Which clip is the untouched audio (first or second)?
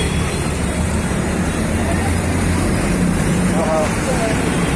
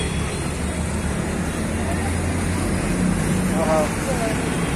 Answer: second